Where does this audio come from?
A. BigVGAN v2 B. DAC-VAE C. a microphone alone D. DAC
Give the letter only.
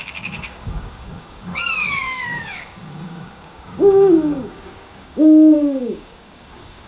D